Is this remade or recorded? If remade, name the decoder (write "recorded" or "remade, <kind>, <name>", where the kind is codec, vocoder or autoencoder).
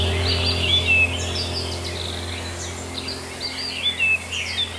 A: recorded